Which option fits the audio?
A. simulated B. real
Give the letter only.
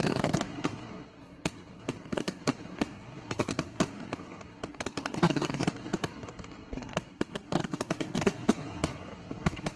A